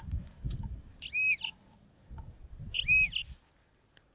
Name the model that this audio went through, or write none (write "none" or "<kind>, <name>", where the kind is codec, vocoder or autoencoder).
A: none